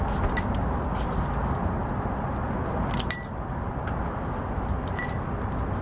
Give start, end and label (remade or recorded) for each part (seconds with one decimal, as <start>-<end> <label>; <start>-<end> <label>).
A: 0.0-5.8 recorded